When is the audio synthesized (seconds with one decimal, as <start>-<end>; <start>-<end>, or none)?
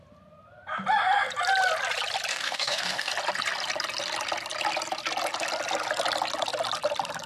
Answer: 2.3-3.1